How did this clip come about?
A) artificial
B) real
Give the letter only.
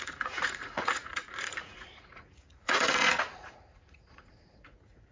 A